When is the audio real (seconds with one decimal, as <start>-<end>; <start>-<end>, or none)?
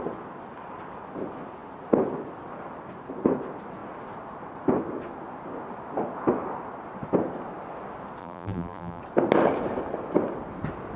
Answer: 0.0-8.2; 9.0-11.0